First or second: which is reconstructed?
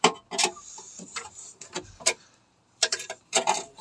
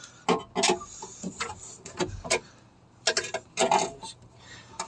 first